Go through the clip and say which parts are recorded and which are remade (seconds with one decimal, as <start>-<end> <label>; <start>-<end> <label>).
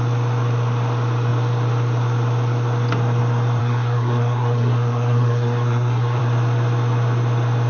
0.0-3.6 recorded; 3.6-6.2 remade; 6.2-7.7 recorded